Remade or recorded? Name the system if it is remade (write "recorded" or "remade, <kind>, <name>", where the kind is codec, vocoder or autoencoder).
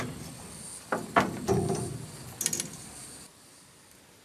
recorded